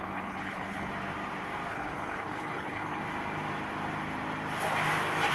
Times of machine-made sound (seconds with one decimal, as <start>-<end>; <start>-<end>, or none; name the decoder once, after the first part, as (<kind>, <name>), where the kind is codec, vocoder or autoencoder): 0.0-0.9 (codec, HILCodec); 1.7-3.0

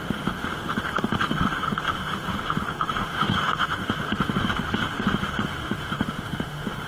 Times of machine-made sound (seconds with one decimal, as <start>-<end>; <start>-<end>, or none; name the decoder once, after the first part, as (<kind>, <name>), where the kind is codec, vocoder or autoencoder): 0.0-0.6 (autoencoder, DAC-VAE); 1.3-6.9